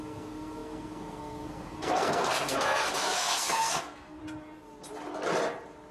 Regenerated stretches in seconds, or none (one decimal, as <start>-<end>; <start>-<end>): 0.0-4.2